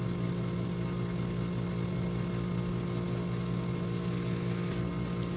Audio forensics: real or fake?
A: real